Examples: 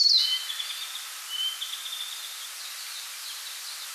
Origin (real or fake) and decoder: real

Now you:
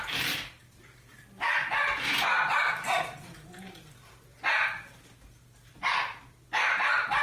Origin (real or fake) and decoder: fake, vocoder, BigVGAN v2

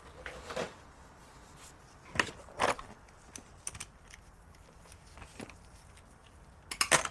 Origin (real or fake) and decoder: real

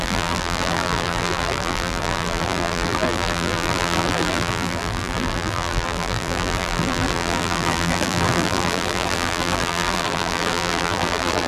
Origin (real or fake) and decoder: fake, vocoder, BigVGAN v2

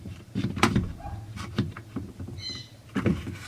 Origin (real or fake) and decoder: fake, vocoder, BigVGAN v2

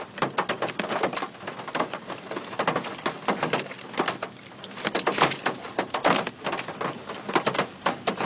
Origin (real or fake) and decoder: real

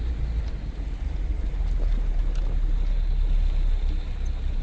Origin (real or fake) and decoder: real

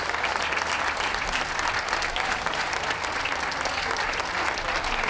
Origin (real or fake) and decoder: real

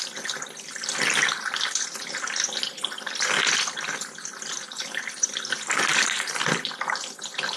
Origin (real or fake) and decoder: real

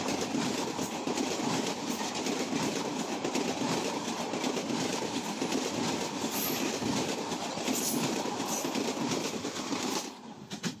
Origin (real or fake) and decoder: real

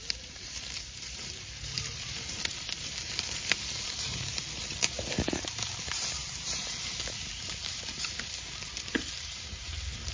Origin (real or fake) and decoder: fake, vocoder, BigVGAN v2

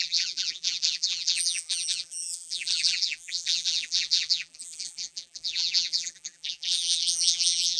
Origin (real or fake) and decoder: fake, vocoder, BigVGAN v2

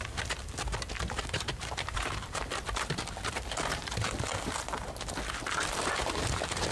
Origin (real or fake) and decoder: fake, vocoder, BigVGAN v2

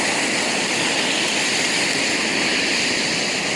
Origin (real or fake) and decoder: real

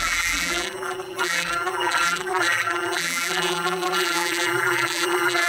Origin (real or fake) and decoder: fake, vocoder, BigVGAN v2